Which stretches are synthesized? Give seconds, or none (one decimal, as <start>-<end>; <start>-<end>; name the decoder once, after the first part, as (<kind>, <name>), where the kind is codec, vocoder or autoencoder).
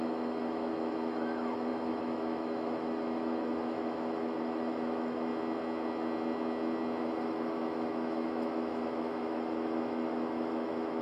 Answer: 0.0-5.3 (autoencoder, DAC-VAE); 7.0-11.0